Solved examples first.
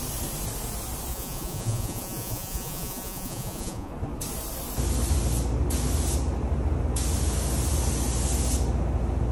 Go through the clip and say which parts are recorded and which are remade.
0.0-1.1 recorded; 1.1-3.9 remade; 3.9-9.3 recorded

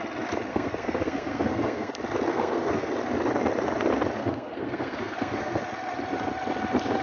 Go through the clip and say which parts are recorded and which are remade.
0.0-0.5 recorded; 0.5-1.9 remade; 1.9-2.3 recorded; 2.3-2.9 remade; 2.9-4.2 recorded; 4.2-5.6 remade; 5.6-7.0 recorded

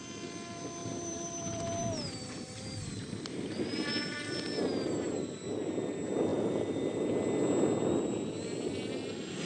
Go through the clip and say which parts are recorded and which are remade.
0.0-0.8 recorded; 0.8-3.9 remade; 3.9-4.7 recorded; 4.7-5.4 remade; 5.4-6.3 recorded; 6.3-7.0 remade; 7.0-9.5 recorded